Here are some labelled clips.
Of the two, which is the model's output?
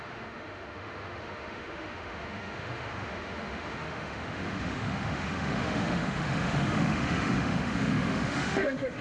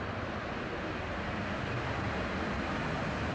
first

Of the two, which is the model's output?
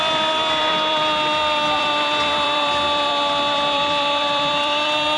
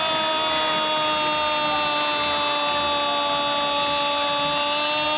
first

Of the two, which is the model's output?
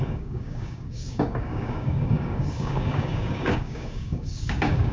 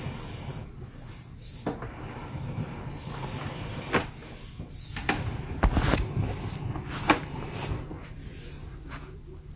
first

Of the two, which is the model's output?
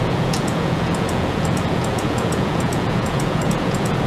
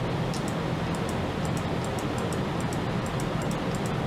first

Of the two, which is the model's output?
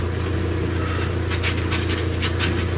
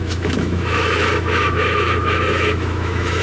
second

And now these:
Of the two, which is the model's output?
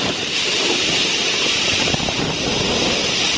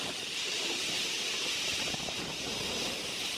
second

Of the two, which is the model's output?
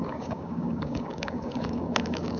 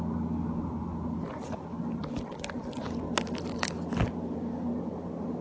first